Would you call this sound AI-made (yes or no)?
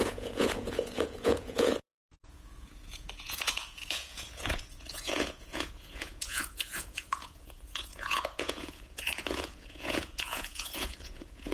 yes